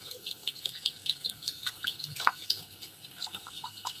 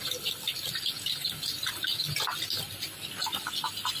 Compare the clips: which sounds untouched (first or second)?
second